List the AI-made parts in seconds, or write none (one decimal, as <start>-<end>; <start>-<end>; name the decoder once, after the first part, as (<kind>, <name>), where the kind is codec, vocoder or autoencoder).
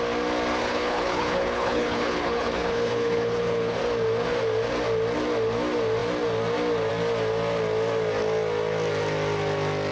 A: 0.6-3.8 (codec, HILCodec)